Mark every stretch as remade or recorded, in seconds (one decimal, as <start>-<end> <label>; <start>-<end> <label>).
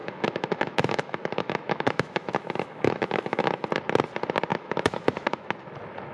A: 0.0-3.7 remade; 3.7-4.5 recorded; 4.5-5.5 remade; 5.5-6.1 recorded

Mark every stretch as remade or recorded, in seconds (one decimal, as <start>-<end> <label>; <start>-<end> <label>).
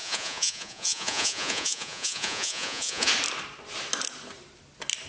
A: 0.0-3.1 remade; 3.1-5.1 recorded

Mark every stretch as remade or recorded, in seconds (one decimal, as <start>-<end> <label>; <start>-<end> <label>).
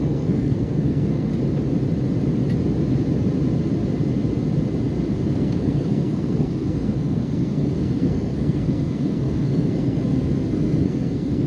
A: 0.0-1.3 remade; 1.3-5.3 recorded; 5.3-11.5 remade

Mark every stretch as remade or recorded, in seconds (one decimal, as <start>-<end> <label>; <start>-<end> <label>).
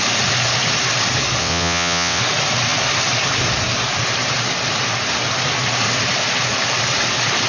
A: 0.0-1.4 recorded; 1.4-2.2 remade; 2.2-7.5 recorded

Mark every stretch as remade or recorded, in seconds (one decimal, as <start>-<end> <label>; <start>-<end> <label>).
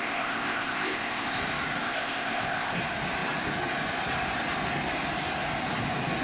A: 0.0-1.4 remade; 1.4-1.8 recorded; 1.8-2.8 remade; 2.8-6.2 recorded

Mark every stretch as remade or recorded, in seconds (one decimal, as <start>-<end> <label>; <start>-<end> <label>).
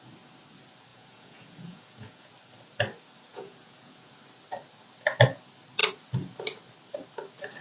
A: 0.0-0.9 recorded; 0.9-2.3 remade; 2.3-3.3 recorded; 3.3-4.1 remade; 4.1-7.6 recorded